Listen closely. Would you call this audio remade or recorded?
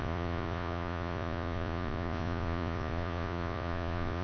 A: remade